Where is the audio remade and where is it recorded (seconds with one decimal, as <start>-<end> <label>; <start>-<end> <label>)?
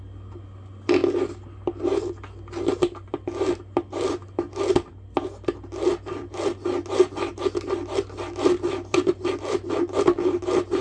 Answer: 0.0-10.8 recorded